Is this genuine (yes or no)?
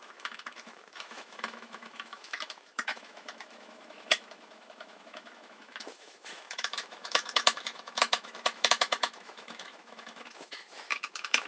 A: no